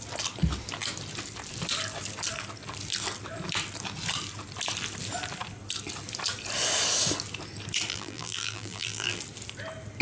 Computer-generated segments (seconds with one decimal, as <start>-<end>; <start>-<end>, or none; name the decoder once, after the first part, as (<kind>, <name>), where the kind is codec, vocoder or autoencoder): 7.9-9.2 (vocoder, BigVGAN v2)